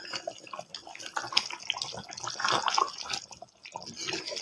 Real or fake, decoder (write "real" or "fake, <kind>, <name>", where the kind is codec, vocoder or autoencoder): real